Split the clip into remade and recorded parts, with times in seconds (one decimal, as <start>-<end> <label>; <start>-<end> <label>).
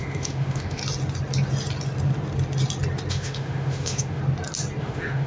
0.0-0.8 remade; 0.8-3.1 recorded; 3.1-4.2 remade; 4.2-4.8 recorded; 4.8-5.3 remade